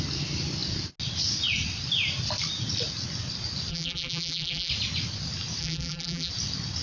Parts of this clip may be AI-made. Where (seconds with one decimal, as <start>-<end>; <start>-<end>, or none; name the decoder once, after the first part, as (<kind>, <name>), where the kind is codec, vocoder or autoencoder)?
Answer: 3.7-4.7 (vocoder, BigVGAN v2); 5.6-6.3